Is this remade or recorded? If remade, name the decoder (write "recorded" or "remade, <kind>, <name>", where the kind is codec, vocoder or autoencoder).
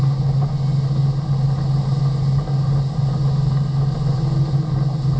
recorded